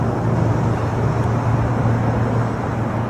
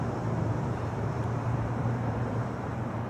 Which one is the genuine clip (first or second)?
first